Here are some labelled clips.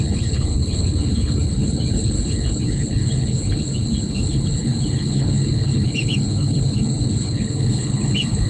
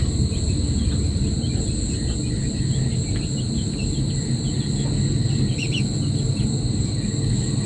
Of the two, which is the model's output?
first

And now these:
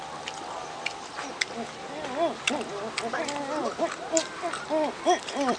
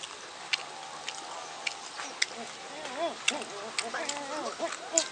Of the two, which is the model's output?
first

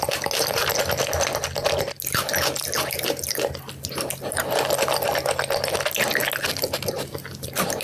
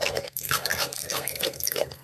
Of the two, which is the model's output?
second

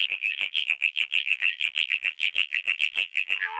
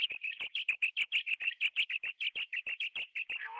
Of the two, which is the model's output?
first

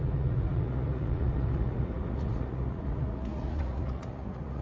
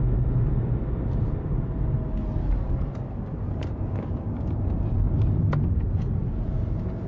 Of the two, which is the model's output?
first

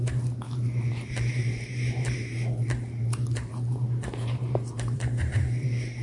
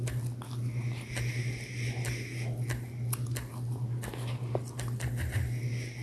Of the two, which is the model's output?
first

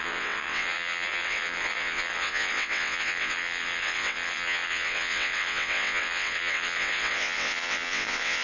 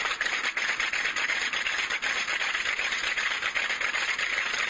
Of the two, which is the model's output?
first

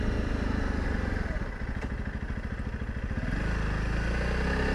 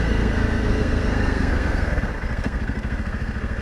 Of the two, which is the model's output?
second